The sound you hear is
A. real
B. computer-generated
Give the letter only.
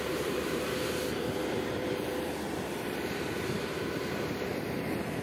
B